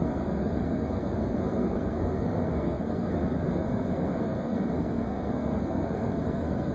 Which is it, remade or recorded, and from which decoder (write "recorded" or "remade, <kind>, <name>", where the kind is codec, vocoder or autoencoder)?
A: remade, codec, SNAC